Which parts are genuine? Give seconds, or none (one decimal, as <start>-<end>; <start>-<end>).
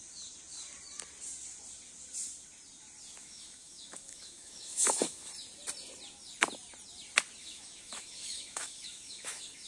0.0-3.2; 5.3-7.4